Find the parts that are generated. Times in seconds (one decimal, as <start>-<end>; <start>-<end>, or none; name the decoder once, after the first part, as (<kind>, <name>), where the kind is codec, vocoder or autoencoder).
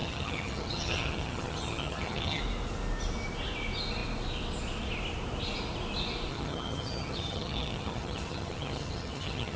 0.0-2.4 (vocoder, HiFi-GAN); 6.3-9.6